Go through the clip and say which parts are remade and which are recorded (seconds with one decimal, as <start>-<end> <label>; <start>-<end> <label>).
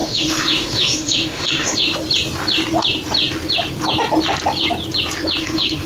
0.0-1.9 remade; 1.9-5.4 recorded; 5.4-5.9 remade